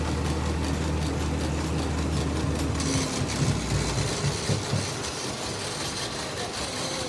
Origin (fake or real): real